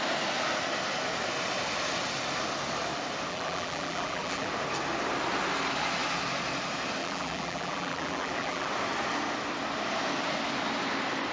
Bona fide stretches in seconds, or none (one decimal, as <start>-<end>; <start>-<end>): 0.0-3.3; 4.5-7.0; 8.7-11.3